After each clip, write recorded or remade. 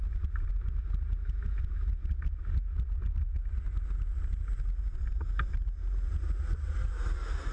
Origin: recorded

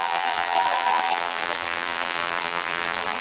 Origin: remade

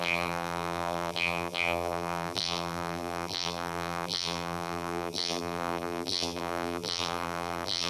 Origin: remade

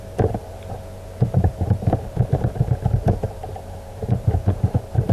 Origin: remade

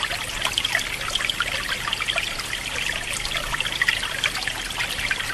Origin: recorded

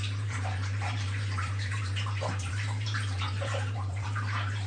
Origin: remade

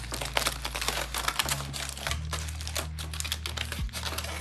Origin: recorded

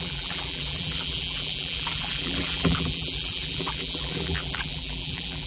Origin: remade